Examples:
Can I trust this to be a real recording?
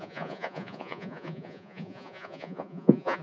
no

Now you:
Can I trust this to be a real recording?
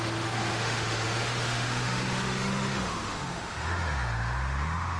no